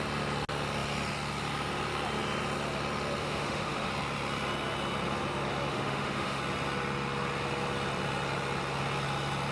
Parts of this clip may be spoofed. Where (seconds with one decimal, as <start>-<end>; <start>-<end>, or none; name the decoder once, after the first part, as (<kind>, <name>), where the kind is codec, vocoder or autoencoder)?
3.2-3.9 (autoencoder, DAC-VAE); 5.7-6.4